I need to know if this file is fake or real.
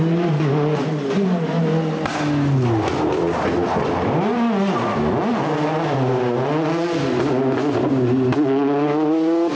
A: real